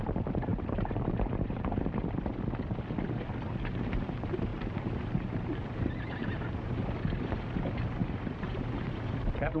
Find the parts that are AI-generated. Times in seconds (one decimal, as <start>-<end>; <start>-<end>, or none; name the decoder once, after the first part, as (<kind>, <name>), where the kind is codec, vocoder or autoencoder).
0.5-1.9 (vocoder, BigVGAN v2); 4.5-7.4; 8.0-9.0